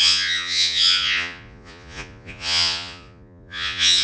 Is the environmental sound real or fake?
fake